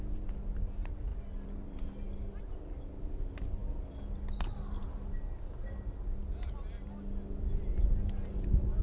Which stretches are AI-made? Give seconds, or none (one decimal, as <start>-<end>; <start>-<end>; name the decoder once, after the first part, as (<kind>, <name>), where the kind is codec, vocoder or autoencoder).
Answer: none